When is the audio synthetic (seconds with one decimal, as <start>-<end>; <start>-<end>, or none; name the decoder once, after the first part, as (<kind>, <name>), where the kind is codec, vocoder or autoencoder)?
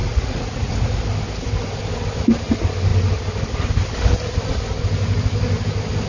0.0-1.0 (vocoder, Vocos)